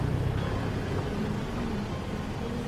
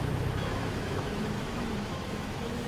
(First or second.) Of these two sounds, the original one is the first